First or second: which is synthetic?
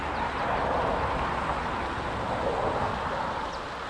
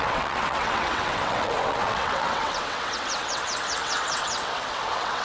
second